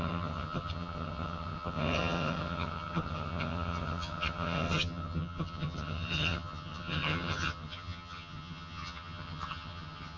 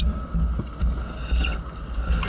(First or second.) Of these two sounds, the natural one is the second